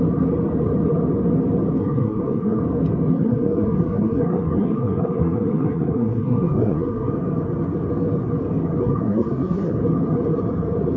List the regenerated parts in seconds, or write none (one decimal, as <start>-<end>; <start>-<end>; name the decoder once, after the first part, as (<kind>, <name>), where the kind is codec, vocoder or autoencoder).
1.8-2.6 (codec, SNAC); 3.1-7.1; 8.8-9.8